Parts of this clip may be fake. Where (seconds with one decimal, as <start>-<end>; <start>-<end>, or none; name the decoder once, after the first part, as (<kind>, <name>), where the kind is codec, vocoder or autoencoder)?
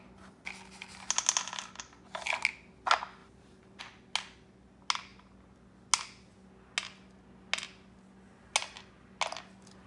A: 3.2-3.8 (vocoder, BigVGAN v2)